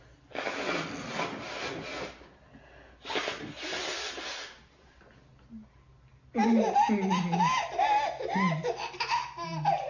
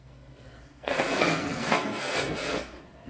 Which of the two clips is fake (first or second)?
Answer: second